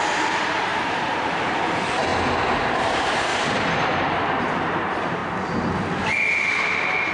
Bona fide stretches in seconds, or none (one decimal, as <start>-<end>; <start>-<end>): 2.1-2.8; 3.3-4.4; 5.2-6.6